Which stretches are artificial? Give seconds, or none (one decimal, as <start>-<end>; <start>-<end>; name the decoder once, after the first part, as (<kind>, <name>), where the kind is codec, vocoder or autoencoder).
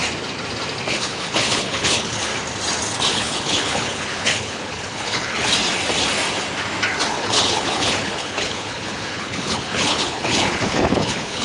0.9-2.3 (codec, HILCodec); 3.1-5.5; 7.1-11.4